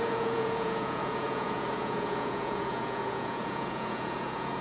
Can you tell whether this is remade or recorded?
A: remade